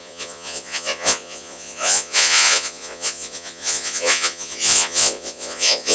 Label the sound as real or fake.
fake